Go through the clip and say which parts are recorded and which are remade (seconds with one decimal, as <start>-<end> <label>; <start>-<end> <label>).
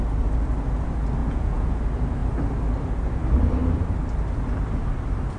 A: 0.0-1.2 recorded; 1.2-1.7 remade; 1.7-5.4 recorded